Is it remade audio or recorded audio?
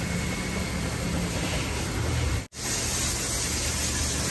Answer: recorded